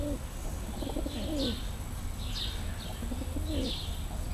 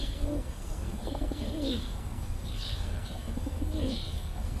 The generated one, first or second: second